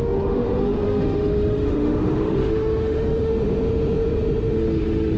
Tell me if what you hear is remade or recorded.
remade